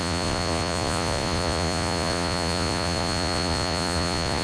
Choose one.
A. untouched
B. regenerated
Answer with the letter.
B